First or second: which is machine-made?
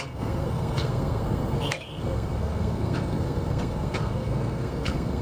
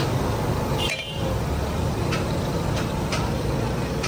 first